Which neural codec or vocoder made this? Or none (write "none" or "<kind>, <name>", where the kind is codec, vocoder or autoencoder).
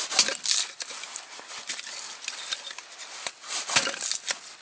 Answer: none